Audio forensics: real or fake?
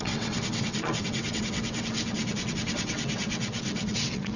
fake